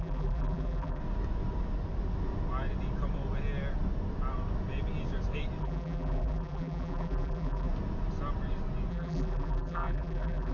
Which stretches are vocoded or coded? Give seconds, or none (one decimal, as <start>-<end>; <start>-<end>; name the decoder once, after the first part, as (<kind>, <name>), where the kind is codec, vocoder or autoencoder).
0.0-1.0 (vocoder, BigVGAN v2); 5.6-7.7; 8.9-10.5